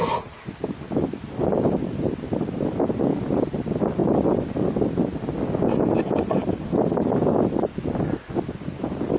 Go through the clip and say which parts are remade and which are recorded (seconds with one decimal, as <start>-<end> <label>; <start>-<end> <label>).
0.0-9.2 recorded